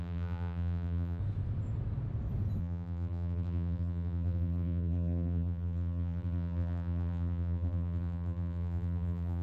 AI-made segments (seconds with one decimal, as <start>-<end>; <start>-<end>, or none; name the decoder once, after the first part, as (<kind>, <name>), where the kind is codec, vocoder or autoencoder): 0.0-1.2 (vocoder, BigVGAN v2); 2.6-9.4